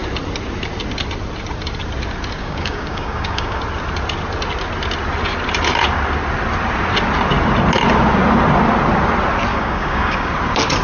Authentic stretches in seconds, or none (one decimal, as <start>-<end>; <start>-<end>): 0.0-2.4; 3.6-9.5; 10.3-10.8